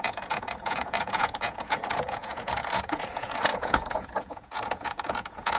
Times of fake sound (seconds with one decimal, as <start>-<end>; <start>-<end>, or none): 0.0-5.6